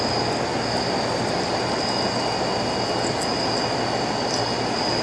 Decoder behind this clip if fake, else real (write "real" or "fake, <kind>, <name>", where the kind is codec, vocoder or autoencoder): real